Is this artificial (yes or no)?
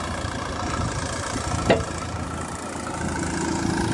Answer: no